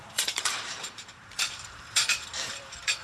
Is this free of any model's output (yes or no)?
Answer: no